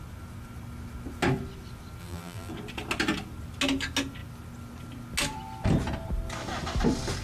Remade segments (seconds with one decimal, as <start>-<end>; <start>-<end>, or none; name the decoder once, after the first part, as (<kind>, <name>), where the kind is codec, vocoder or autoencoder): 2.0-2.5 (vocoder, BigVGAN v2)

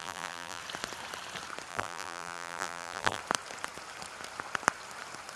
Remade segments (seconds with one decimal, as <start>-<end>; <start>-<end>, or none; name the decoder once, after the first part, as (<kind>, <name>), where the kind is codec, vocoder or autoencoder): 0.0-0.6 (vocoder, BigVGAN v2); 1.7-3.2

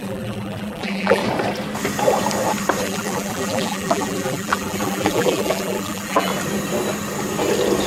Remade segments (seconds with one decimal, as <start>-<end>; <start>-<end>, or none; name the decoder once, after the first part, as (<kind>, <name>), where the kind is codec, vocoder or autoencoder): 0.0-1.2 (vocoder, BigVGAN v2); 2.8-6.3

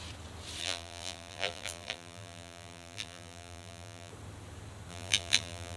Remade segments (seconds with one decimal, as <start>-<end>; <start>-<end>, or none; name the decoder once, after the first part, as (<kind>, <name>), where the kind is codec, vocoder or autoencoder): 0.6-4.1 (vocoder, BigVGAN v2); 4.9-5.8